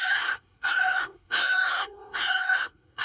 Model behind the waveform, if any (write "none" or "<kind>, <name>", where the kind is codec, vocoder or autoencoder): codec, SNAC